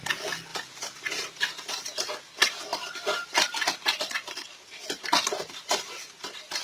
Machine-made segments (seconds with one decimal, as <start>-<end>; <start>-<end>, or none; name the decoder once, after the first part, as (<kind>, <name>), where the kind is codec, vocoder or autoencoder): 0.5-2.1 (vocoder, BigVGAN v2); 2.7-6.0